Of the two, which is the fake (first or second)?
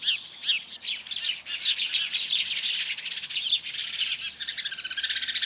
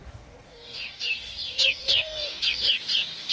second